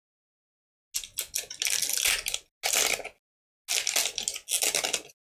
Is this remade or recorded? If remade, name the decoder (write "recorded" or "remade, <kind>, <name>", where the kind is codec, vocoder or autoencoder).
recorded